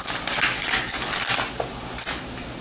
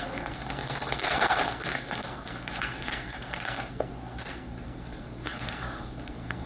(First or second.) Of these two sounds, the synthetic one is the second